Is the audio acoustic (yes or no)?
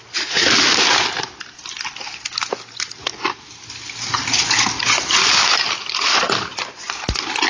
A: yes